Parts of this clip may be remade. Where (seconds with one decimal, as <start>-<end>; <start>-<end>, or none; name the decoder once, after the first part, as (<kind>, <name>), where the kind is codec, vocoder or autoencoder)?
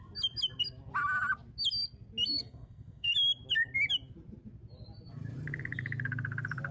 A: 2.4-3.1 (codec, SNAC)